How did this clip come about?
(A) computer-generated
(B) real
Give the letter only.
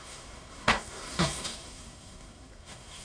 A